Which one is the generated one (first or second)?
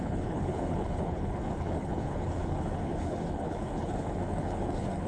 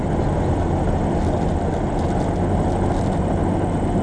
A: first